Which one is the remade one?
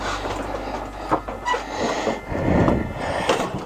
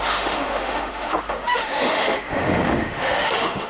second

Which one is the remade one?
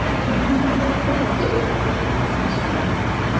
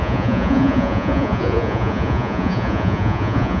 second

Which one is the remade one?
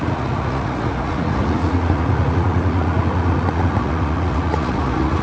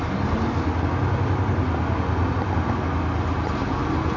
first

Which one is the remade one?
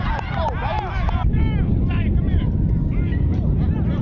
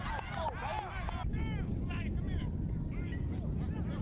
first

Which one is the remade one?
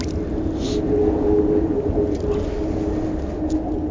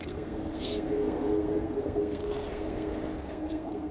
second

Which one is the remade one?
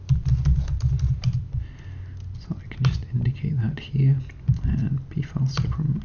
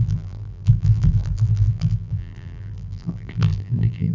second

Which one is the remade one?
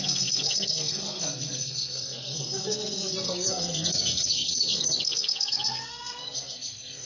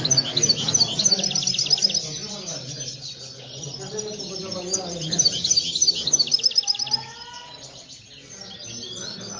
first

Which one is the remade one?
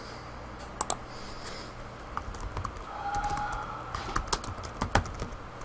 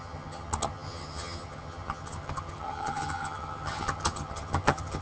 second